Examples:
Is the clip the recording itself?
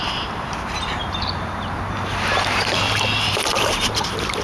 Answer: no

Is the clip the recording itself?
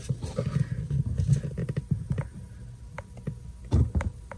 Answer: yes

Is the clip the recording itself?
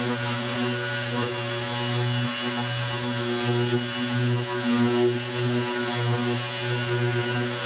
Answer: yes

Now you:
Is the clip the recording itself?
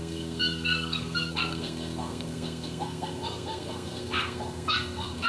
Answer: no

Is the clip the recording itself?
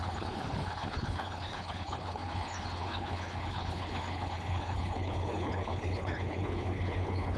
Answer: no